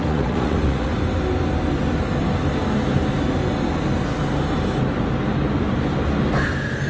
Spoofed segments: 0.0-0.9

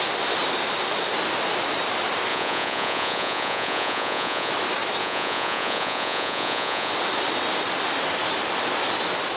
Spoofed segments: 2.3-4.5; 5.0-6.9

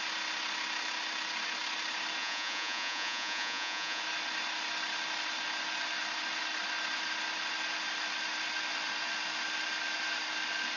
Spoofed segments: 2.2-4.0

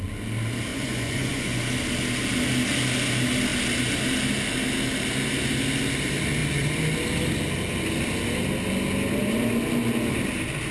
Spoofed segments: 0.7-1.6

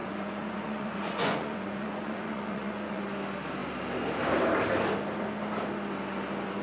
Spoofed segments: 0.0-3.0

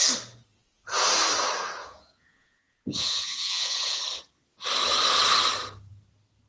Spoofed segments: 1.8-4.0

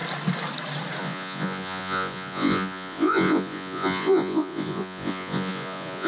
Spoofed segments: 1.0-6.1

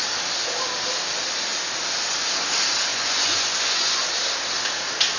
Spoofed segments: 2.9-4.0